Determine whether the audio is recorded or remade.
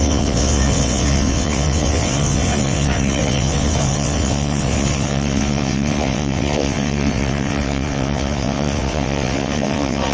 remade